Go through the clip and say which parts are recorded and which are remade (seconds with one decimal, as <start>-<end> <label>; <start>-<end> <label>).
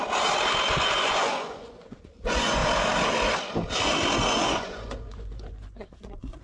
0.0-0.8 recorded; 0.8-2.6 remade; 2.6-4.3 recorded; 4.3-6.4 remade